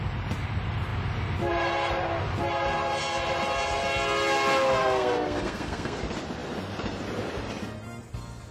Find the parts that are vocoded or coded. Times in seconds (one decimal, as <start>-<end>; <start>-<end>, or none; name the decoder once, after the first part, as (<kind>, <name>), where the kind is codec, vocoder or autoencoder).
4.8-6.0 (codec, SNAC)

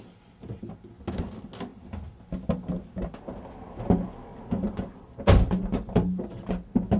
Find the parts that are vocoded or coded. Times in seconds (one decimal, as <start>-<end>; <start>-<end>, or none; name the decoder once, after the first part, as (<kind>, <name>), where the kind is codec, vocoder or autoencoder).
none

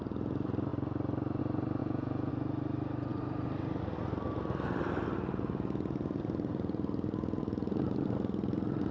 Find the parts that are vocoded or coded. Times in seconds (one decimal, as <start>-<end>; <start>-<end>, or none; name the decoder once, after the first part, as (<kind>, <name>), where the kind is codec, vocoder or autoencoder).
1.8-2.3 (vocoder, Vocos)

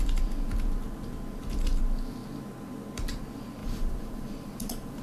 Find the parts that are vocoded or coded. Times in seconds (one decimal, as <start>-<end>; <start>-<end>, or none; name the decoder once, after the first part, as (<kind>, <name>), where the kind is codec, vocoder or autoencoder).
3.6-5.0 (vocoder, BigVGAN v2)

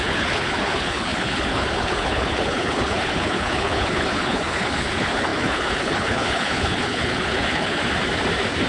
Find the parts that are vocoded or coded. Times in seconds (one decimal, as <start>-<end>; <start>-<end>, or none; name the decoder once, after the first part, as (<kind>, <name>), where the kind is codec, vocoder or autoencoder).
0.0-7.8 (codec, HILCodec)

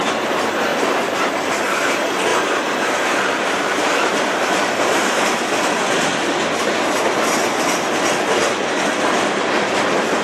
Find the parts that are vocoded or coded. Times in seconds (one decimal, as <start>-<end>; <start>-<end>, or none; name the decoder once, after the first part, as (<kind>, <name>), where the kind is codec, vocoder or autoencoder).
0.7-1.3 (vocoder, BigVGAN v2); 2.3-5.2

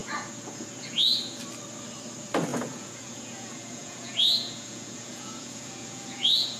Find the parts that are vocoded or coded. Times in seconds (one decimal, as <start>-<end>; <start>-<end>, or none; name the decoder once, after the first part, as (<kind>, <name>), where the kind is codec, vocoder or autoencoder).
0.0-1.4 (vocoder, Vocos); 2.5-6.6